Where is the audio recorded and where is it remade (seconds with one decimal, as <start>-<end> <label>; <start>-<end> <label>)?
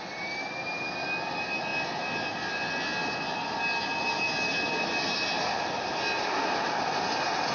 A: 0.0-7.5 recorded